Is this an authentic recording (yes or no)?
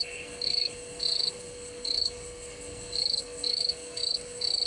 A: no